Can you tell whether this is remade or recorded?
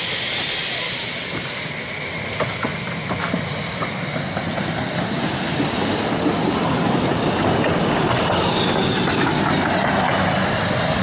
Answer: recorded